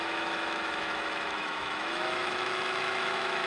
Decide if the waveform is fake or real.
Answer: fake